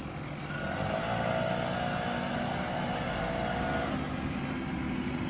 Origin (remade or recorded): recorded